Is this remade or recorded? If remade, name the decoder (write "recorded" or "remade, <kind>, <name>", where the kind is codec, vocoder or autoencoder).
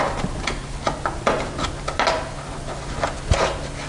recorded